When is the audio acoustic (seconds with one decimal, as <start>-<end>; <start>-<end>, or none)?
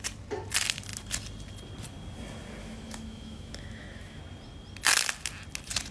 0.0-2.6; 4.2-5.9